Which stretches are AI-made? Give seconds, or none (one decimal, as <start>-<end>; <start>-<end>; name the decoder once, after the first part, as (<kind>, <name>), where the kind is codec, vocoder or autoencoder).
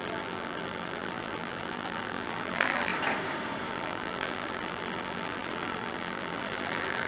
0.0-2.9 (vocoder, BigVGAN v2); 3.7-7.1